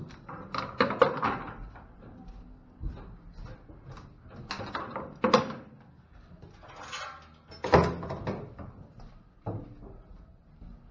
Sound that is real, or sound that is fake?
real